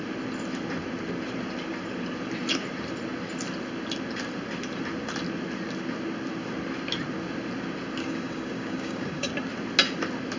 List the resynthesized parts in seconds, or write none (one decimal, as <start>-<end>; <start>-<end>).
8.0-9.3